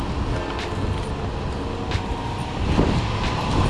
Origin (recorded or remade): recorded